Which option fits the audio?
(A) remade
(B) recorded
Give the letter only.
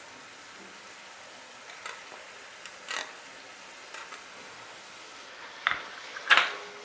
B